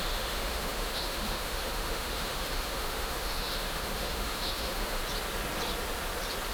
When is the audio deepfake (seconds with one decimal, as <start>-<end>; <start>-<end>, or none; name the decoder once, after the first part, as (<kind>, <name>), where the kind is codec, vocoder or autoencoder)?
0.0-5.0 (autoencoder, DAC-VAE)